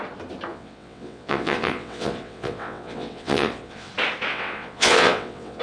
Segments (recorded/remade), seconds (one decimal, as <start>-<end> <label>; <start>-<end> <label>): 0.0-0.5 recorded; 0.5-3.9 remade; 3.9-4.3 recorded; 4.3-5.6 remade